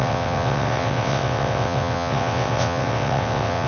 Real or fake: fake